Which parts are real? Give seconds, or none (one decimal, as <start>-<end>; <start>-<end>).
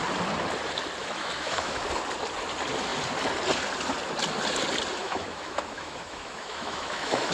0.0-1.0; 1.8-5.0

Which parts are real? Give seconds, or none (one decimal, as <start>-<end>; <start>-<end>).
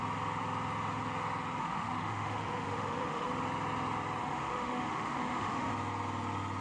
0.0-1.6; 3.3-4.2; 5.7-6.6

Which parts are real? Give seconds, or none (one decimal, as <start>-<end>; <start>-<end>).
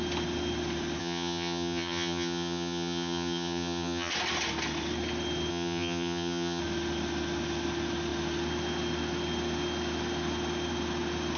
0.0-1.0; 4.1-5.5; 6.6-11.4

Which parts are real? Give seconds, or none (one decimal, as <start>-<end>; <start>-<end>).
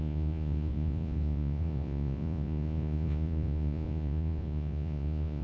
none